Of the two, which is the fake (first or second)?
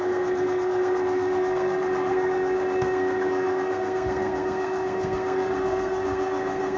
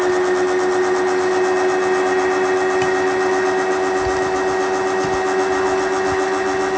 first